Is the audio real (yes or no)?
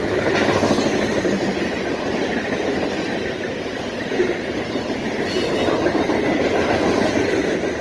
yes